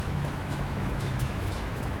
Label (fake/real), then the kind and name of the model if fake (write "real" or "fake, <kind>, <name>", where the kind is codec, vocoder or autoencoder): fake, autoencoder, DAC-VAE